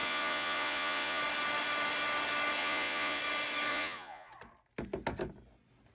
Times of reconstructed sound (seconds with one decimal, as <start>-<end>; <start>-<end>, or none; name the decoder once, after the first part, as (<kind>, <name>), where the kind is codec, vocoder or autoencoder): 0.0-1.2 (vocoder, Vocos); 2.6-3.2; 3.7-4.3